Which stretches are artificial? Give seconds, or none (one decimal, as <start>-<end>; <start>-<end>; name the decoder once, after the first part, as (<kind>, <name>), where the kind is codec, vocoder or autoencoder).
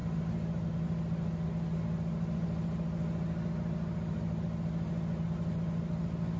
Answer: none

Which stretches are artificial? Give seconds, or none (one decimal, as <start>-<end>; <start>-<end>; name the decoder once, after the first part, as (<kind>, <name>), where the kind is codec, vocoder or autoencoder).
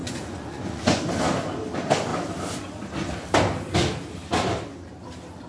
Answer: 0.0-1.0 (vocoder, Vocos)